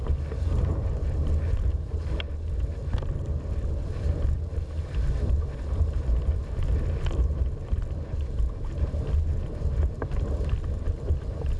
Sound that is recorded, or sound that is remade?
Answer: recorded